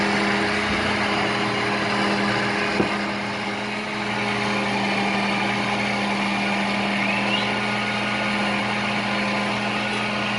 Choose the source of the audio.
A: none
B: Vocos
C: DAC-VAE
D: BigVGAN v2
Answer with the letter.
A